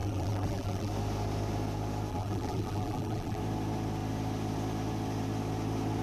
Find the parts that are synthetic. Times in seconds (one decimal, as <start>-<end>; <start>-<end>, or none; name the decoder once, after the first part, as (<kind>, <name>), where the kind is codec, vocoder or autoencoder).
0.0-0.9 (vocoder, BigVGAN v2); 2.1-3.4